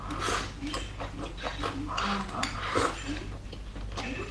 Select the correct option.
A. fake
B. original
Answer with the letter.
B